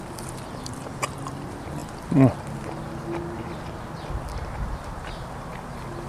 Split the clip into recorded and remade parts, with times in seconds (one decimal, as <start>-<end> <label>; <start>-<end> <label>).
0.0-6.1 recorded